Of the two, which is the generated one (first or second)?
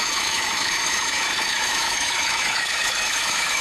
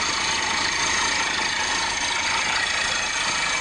first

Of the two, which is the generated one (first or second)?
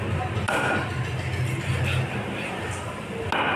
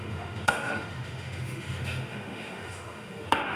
second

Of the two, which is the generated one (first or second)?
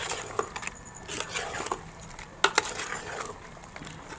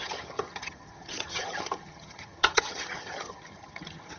second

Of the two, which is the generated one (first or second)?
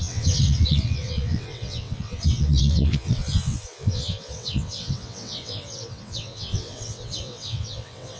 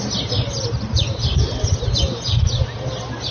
first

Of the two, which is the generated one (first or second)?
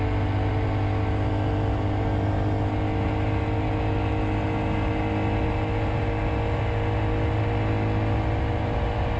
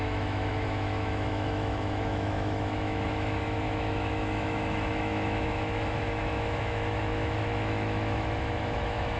second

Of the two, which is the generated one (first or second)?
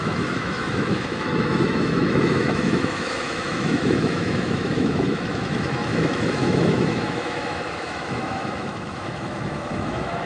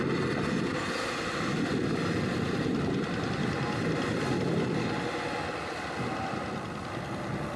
first